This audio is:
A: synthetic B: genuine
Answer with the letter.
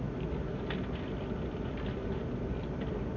B